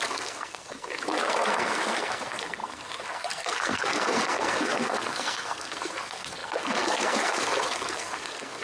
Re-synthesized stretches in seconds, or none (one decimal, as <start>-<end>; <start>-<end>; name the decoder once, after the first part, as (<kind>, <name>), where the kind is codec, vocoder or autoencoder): 0.0-8.6 (codec, SNAC)